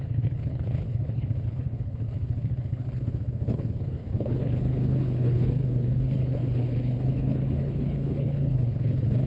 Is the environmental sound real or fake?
fake